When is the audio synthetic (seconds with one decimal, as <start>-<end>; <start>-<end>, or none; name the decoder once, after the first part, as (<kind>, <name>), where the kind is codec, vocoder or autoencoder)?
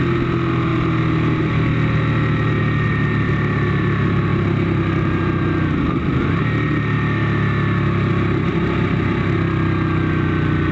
none